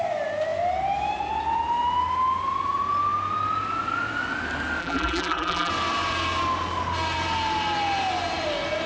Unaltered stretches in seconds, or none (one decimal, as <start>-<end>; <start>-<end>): 0.0-4.8; 5.7-8.9